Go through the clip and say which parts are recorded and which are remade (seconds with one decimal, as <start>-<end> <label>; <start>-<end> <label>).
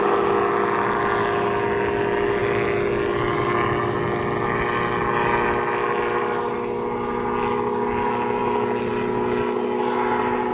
0.0-10.5 recorded